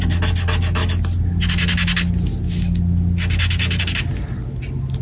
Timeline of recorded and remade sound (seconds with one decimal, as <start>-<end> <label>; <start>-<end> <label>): 0.0-5.0 recorded